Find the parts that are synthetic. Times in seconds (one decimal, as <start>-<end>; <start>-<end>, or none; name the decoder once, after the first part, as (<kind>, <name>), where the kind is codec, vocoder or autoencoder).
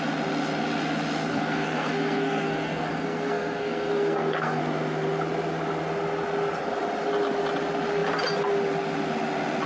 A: 1.3-4.6 (codec, SNAC)